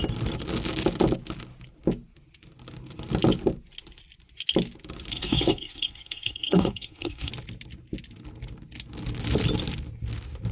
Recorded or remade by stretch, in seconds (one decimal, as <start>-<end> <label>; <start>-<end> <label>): 0.0-5.1 recorded; 5.1-7.3 remade; 7.3-10.5 recorded